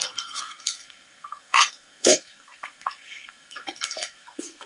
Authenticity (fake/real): fake